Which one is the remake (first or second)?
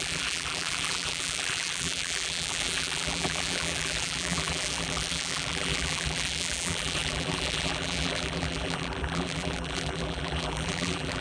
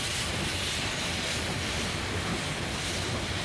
first